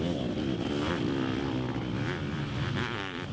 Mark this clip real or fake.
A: real